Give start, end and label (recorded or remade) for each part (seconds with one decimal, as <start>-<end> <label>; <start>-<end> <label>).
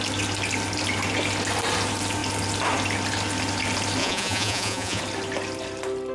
0.0-4.0 recorded; 4.0-5.0 remade; 5.0-6.1 recorded